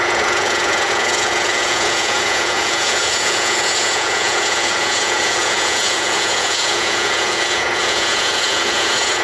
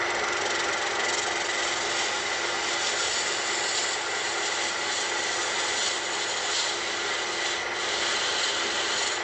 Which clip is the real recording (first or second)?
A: second